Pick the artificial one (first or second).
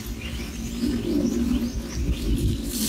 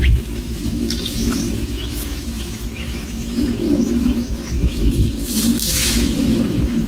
second